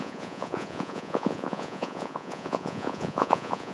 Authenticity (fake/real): fake